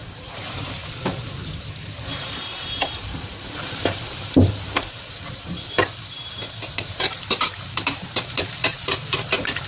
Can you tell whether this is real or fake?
fake